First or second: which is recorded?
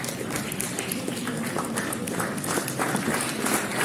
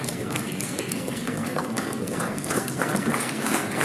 first